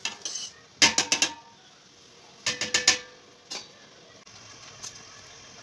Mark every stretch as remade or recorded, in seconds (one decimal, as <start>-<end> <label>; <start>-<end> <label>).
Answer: 0.0-5.6 recorded